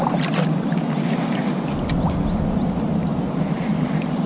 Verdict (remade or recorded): recorded